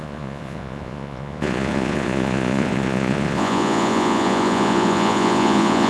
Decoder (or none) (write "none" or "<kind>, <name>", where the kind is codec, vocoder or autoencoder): vocoder, Vocos